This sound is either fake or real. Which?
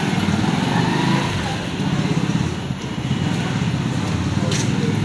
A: real